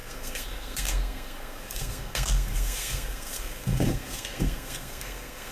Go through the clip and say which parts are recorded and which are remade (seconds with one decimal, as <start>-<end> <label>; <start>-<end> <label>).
0.0-5.5 remade